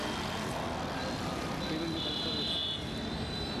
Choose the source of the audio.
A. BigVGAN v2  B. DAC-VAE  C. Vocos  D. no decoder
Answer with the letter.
D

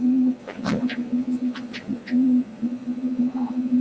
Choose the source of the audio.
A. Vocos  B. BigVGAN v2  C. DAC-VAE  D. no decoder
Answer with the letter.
A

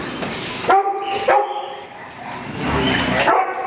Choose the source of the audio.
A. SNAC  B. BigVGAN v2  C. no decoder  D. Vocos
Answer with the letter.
C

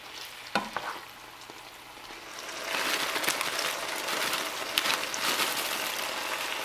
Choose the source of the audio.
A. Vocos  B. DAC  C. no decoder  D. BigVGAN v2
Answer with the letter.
C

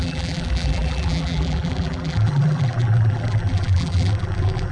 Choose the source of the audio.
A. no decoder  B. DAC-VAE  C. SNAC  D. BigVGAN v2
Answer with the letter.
D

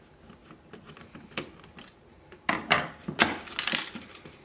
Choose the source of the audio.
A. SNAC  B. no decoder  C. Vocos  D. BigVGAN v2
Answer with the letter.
B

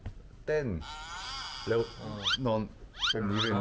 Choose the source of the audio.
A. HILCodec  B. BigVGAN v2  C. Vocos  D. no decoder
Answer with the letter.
D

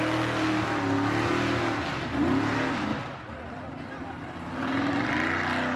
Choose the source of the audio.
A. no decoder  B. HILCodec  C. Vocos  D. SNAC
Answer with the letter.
A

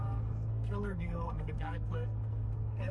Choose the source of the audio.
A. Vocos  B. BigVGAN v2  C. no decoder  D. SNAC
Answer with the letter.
D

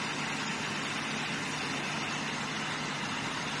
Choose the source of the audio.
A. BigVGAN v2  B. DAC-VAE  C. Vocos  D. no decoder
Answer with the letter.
D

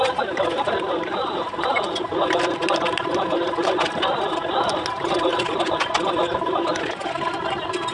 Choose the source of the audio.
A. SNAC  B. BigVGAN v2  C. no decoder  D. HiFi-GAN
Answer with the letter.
C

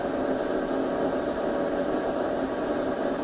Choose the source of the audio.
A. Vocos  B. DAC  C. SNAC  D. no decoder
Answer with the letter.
D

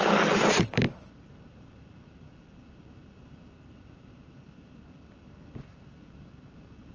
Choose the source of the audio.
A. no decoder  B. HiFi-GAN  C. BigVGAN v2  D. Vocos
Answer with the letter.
C